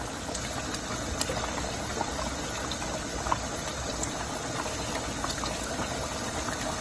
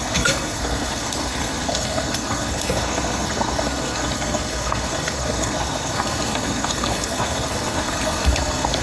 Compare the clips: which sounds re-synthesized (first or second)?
second